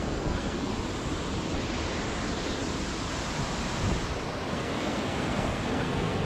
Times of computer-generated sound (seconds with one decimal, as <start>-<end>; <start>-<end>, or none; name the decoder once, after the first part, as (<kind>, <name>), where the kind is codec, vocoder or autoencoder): 0.0-0.7 (codec, SNAC); 4.5-6.3